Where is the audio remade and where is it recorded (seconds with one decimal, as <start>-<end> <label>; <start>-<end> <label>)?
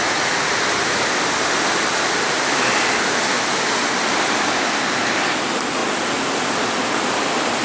0.0-0.5 remade; 0.5-7.6 recorded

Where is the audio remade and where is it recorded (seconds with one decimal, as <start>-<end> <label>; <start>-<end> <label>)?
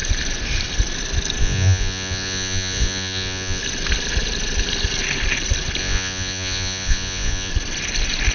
0.0-1.4 recorded; 1.4-3.6 remade; 3.6-5.8 recorded; 5.8-7.5 remade; 7.5-8.3 recorded